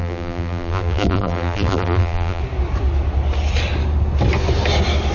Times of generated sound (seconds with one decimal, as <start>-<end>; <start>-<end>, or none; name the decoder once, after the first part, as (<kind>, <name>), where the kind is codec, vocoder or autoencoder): 0.0-2.4 (vocoder, BigVGAN v2)